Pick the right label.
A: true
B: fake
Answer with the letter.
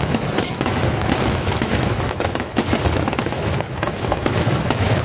B